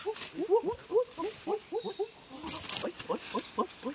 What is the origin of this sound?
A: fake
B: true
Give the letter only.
B